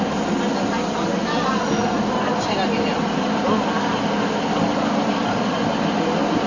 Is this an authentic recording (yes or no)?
yes